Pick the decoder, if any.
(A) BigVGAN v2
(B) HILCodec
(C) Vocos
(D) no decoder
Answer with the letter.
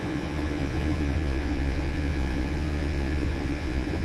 C